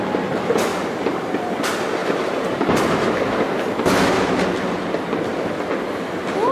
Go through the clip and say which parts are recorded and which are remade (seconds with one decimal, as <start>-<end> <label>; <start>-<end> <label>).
0.0-0.7 recorded; 0.7-1.6 remade; 1.6-2.0 recorded; 2.0-3.9 remade; 3.9-6.5 recorded